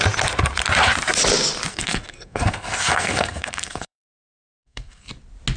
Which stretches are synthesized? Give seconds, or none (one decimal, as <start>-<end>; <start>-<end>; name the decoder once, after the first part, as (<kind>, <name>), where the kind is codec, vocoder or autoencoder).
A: 1.7-5.1 (codec, SNAC)